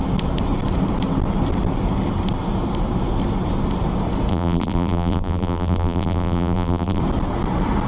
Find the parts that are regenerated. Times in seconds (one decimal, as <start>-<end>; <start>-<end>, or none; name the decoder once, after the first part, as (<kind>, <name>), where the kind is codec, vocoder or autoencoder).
4.3-7.0 (vocoder, BigVGAN v2)